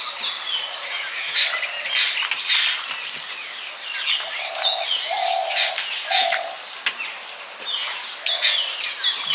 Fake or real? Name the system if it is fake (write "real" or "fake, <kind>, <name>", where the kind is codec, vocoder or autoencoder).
real